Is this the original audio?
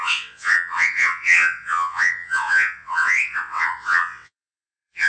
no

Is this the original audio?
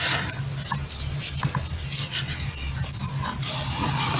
yes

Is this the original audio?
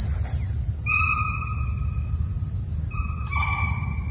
yes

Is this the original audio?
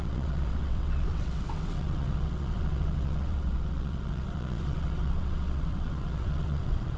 no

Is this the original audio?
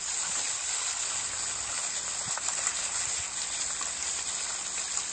yes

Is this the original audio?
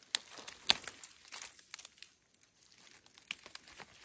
yes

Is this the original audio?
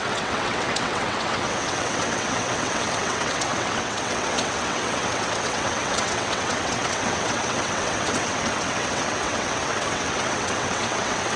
no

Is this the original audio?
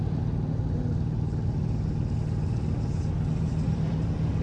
yes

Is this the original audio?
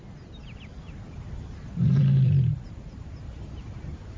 yes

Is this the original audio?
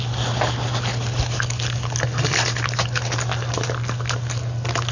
yes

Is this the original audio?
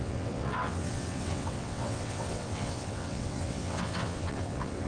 no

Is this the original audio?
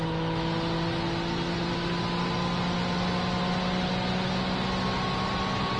yes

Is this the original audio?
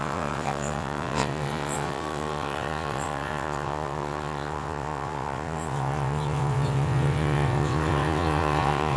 no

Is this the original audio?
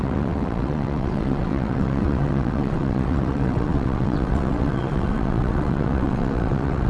no